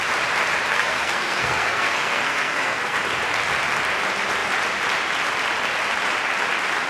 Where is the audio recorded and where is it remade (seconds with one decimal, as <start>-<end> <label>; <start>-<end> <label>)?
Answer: 0.0-0.7 recorded; 0.7-3.0 remade; 3.0-6.9 recorded